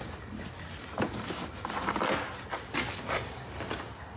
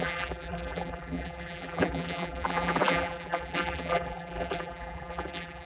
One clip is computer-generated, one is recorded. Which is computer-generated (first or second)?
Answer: second